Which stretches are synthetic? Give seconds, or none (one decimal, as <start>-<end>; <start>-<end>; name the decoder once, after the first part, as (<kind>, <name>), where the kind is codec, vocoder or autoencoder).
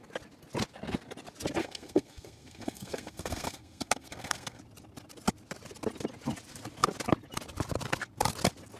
1.6-4.6 (codec, SNAC)